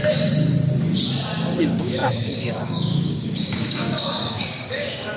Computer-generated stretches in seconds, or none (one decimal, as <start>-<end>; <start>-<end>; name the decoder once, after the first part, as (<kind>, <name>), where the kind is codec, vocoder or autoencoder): 1.6-5.2 (codec, DAC)